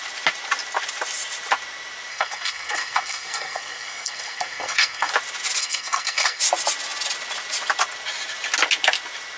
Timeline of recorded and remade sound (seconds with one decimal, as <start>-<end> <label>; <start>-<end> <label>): 0.0-2.1 recorded; 2.1-5.1 remade; 5.1-5.6 recorded; 5.6-6.4 remade; 6.4-9.4 recorded